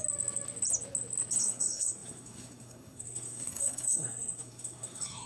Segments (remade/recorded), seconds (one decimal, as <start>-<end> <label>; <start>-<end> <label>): 0.0-1.4 recorded; 1.4-5.3 remade